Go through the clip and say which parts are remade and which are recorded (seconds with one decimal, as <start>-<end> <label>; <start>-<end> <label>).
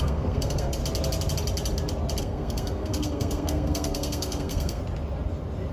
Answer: 0.0-0.8 remade; 0.8-2.2 recorded; 2.2-4.8 remade; 4.8-5.7 recorded